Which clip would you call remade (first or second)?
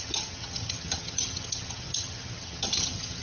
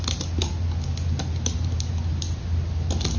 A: first